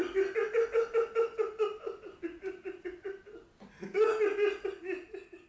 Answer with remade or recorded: recorded